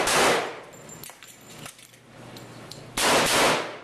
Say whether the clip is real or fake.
real